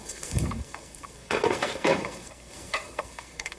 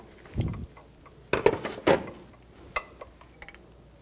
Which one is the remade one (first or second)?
first